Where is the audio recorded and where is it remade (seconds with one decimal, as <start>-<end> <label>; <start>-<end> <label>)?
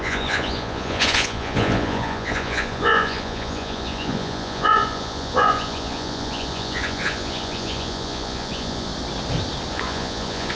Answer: 0.0-8.9 remade; 8.9-9.7 recorded; 9.7-10.6 remade